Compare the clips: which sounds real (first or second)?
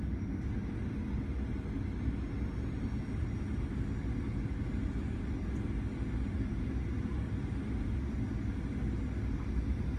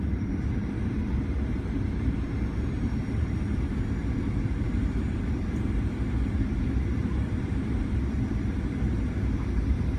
first